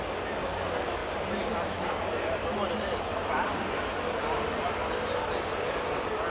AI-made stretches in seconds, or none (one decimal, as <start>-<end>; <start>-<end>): 1.0-3.5